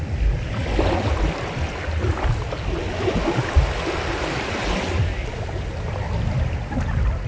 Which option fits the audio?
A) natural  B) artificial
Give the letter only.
A